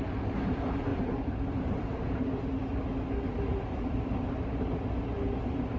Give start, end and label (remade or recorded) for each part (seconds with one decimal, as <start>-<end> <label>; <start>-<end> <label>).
0.0-0.9 recorded; 0.9-2.4 remade; 2.4-3.5 recorded; 3.5-4.9 remade; 4.9-5.8 recorded